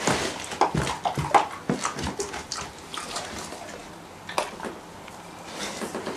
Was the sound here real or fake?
real